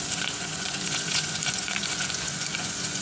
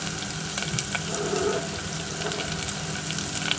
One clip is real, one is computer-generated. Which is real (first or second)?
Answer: second